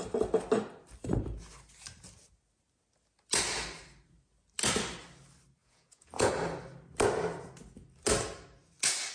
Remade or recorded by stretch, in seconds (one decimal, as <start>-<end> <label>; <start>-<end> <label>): 0.0-5.6 recorded; 5.6-6.3 remade; 6.3-9.1 recorded